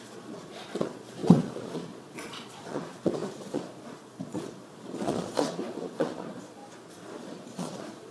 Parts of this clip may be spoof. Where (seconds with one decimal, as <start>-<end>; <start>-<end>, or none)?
0.0-6.6; 7.2-8.1